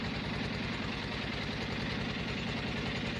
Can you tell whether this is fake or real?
real